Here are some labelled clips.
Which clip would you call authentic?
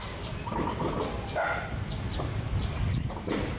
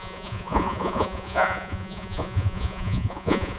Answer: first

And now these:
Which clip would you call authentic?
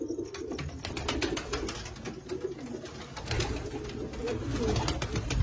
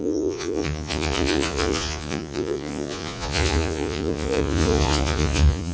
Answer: first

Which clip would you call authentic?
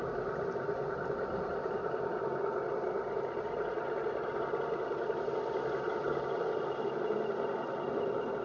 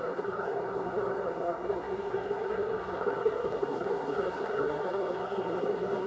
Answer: first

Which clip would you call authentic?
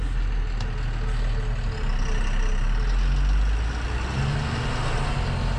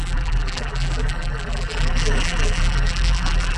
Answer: first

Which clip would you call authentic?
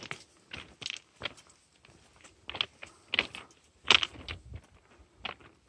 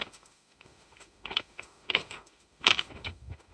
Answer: first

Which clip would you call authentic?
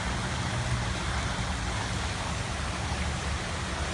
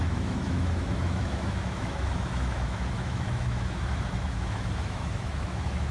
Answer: first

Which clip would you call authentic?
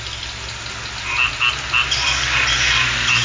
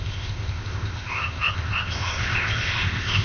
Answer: first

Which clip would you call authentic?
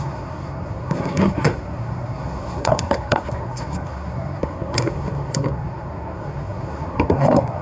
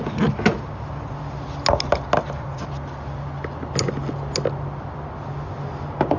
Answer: second